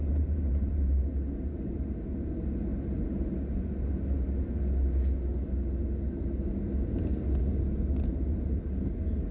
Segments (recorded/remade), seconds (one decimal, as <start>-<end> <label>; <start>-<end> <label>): 0.0-2.3 remade; 2.3-9.3 recorded